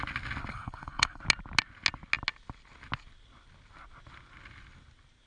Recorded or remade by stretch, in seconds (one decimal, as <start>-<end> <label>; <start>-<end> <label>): 0.0-0.5 recorded; 0.5-1.2 remade; 1.2-5.3 recorded